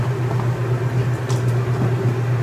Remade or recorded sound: recorded